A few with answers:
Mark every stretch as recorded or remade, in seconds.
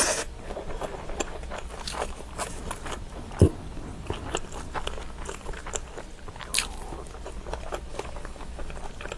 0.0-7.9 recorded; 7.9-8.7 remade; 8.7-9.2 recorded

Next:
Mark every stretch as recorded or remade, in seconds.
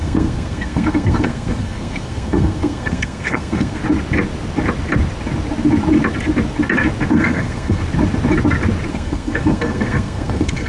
0.0-3.8 remade; 3.8-7.1 recorded; 7.1-7.8 remade; 7.8-8.9 recorded; 8.9-10.7 remade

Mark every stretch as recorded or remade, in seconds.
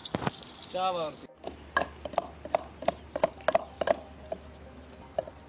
0.0-5.5 recorded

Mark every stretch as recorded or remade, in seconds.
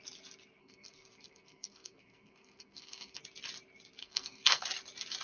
0.0-0.6 recorded; 0.6-3.2 remade; 3.2-4.0 recorded; 4.0-4.6 remade; 4.6-5.2 recorded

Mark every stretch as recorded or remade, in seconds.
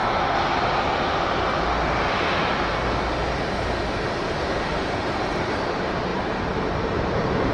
0.0-4.5 recorded; 4.5-7.5 remade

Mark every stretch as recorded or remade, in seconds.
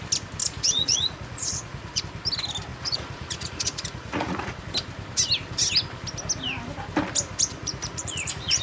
0.0-0.4 recorded; 0.4-2.0 remade; 2.0-2.7 recorded; 2.7-4.6 remade; 4.6-7.6 recorded; 7.6-8.6 remade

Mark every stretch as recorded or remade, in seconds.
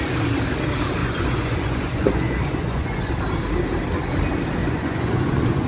0.0-1.0 recorded; 1.0-3.1 remade; 3.1-4.6 recorded; 4.6-5.7 remade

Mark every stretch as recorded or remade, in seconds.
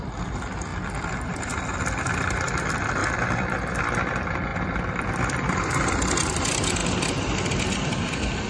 0.0-6.8 remade; 6.8-8.5 recorded